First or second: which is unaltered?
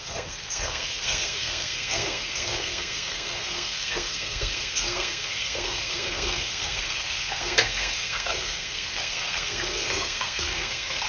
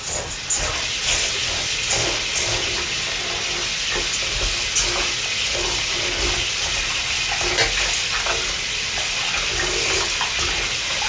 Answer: second